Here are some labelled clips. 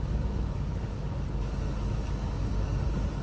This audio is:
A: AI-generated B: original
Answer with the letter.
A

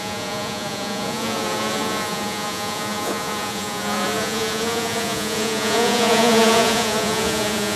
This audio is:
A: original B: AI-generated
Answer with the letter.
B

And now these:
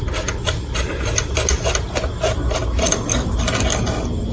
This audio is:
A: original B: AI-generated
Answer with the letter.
A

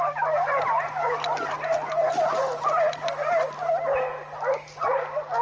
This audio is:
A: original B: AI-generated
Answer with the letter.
A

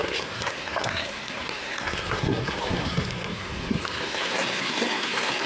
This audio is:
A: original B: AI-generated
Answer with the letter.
B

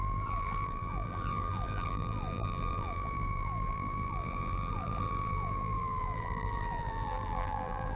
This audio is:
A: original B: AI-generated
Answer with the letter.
B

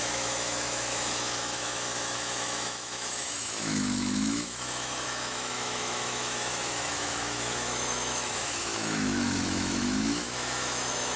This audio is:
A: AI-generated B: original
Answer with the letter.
A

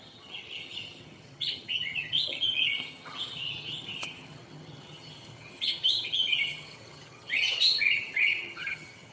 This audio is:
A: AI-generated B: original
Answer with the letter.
A